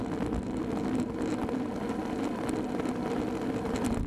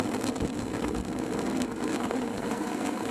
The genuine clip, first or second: first